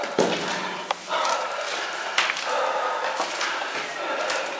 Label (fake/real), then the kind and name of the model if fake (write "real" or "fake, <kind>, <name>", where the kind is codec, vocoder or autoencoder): real